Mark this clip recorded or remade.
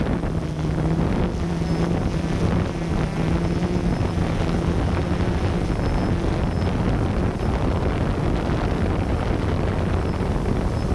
recorded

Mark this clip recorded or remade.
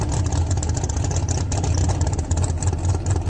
recorded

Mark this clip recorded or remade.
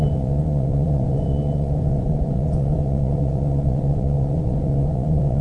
remade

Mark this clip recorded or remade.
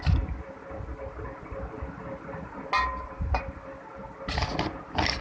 recorded